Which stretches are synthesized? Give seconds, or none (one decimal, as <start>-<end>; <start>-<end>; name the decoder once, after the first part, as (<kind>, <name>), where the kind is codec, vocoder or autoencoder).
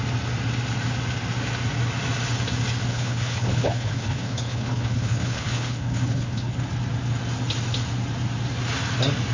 2.9-6.6 (codec, HILCodec)